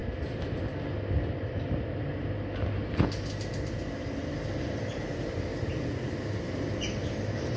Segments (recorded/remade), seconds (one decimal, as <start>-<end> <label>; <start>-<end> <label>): 0.0-7.6 recorded